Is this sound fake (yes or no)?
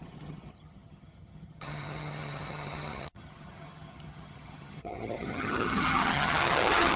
yes